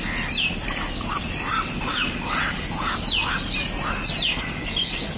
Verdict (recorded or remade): recorded